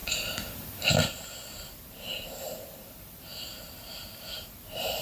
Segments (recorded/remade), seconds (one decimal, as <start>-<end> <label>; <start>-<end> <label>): 0.0-5.0 remade

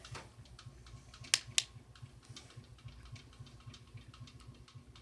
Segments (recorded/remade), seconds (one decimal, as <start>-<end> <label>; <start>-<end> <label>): 0.0-5.0 recorded

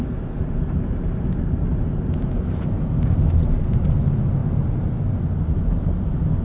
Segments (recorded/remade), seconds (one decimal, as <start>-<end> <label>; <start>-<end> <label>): 0.0-6.4 recorded

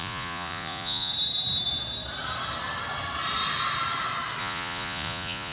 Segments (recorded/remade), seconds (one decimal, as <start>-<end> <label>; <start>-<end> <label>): 0.0-1.1 remade; 1.1-4.4 recorded; 4.4-5.5 remade